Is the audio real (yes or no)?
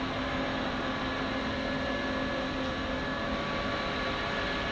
yes